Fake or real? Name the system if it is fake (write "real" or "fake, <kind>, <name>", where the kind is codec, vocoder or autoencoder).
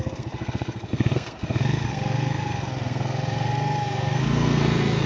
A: fake, codec, SNAC